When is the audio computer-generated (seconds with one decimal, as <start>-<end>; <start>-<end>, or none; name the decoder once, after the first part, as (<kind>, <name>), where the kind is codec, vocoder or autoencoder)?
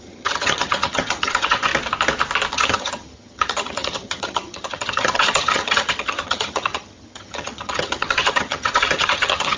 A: 0.0-1.7 (vocoder, HiFi-GAN); 2.5-9.6